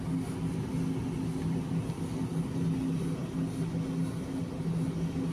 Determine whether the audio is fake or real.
real